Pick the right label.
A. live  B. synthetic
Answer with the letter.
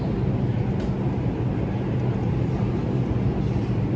A